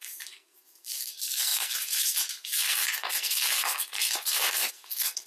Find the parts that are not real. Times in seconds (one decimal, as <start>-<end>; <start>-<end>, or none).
0.0-5.3